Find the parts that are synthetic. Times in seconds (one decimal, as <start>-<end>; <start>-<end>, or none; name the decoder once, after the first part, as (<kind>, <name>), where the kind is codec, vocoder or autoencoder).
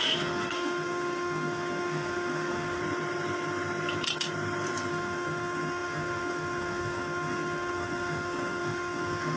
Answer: 0.0-2.8 (autoencoder, DAC-VAE); 4.9-9.4